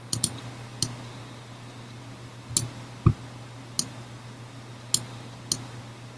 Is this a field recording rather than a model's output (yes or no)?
yes